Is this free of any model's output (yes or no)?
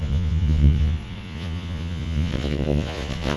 no